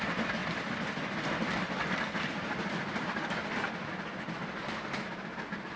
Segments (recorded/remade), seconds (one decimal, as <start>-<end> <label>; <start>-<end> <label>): 0.0-0.4 recorded; 0.4-3.9 remade; 3.9-4.5 recorded; 4.5-5.1 remade; 5.1-5.8 recorded